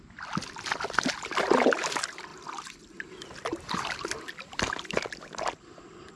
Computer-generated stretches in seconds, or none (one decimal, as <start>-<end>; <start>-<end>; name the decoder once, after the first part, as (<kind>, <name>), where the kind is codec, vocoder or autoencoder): none